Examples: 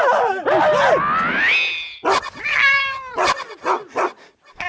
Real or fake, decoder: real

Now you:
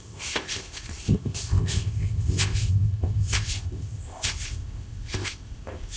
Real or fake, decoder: fake, codec, ZipCodec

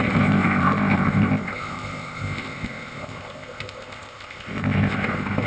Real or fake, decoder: fake, codec, ZipCodec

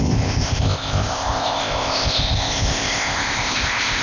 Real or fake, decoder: fake, codec, ZipCodec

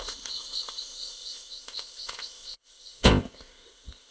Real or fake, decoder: fake, codec, ZipCodec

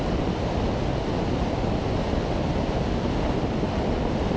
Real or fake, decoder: real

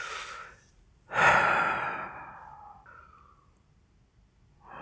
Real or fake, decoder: real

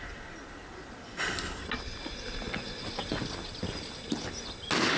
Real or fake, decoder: real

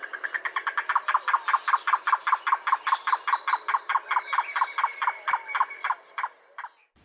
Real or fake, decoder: real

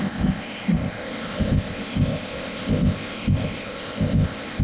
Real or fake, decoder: fake, codec, ZipCodec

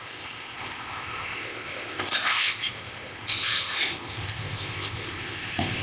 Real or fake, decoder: fake, codec, ZipCodec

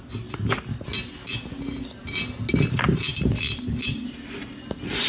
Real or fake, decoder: real